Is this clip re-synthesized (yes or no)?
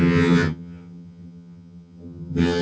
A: yes